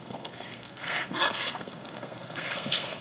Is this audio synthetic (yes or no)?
yes